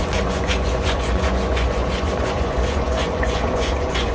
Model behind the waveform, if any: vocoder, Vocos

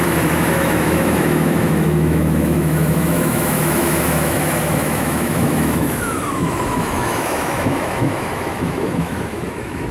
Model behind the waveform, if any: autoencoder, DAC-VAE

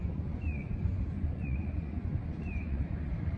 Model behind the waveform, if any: vocoder, Vocos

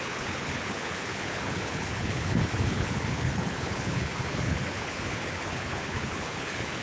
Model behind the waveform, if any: codec, HILCodec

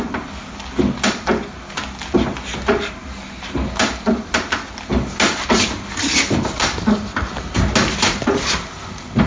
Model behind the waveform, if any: none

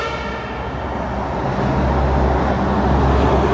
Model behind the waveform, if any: none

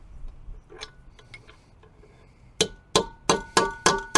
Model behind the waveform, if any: none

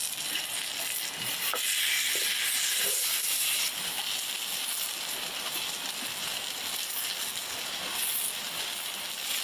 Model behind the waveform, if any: none